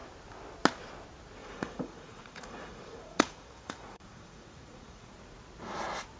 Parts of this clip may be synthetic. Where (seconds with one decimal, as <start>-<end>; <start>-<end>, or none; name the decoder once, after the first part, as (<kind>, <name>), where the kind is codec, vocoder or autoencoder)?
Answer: 1.4-5.1 (vocoder, Vocos)